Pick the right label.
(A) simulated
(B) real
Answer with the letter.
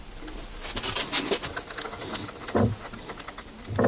B